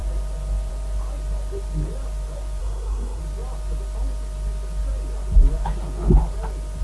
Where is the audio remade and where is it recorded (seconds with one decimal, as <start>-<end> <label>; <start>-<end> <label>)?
0.0-2.6 recorded; 2.6-3.2 remade; 3.2-6.8 recorded